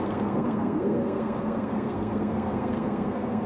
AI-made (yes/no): yes